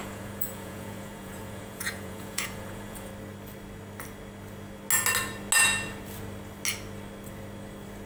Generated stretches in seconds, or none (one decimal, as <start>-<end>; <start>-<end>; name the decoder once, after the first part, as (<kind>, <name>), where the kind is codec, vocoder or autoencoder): 0.0-3.1 (vocoder, Vocos)

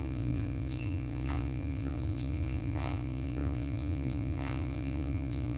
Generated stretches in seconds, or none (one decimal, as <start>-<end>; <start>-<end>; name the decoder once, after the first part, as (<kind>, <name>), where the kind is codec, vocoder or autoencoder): 0.0-5.6 (vocoder, Vocos)

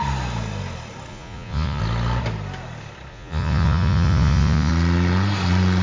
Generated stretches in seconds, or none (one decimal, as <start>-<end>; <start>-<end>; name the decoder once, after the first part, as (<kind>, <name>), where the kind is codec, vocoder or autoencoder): 1.1-1.8 (vocoder, Vocos); 3.1-4.7

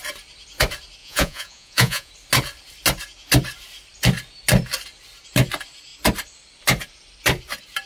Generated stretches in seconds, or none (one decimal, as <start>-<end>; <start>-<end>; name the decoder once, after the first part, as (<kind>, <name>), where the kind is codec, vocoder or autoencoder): 1.0-2.1 (vocoder, Vocos)

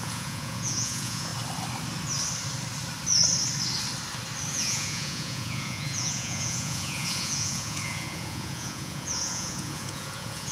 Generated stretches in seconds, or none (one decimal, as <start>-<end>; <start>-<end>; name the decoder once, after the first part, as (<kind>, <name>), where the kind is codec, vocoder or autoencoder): 0.0-1.3 (vocoder, Vocos); 4.5-10.5

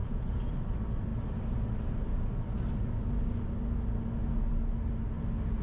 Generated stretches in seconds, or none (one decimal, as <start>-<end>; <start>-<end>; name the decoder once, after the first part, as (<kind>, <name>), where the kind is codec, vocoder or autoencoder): 0.0-0.5 (vocoder, Vocos)

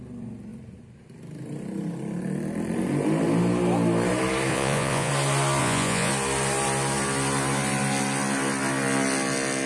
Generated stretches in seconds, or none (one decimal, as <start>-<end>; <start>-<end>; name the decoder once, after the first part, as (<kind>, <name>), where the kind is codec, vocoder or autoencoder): 4.5-5.1 (vocoder, Vocos); 5.6-6.1